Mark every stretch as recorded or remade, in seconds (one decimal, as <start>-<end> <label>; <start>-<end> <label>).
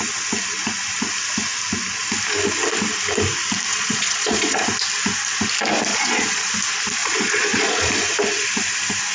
0.0-3.7 recorded; 3.7-4.6 remade; 4.6-5.9 recorded; 5.9-6.5 remade; 6.5-7.0 recorded; 7.0-7.9 remade; 7.9-9.1 recorded